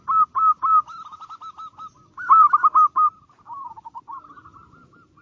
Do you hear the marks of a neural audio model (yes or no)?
no